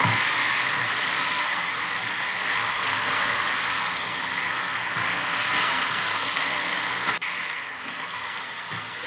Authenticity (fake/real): fake